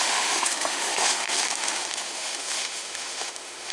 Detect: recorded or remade remade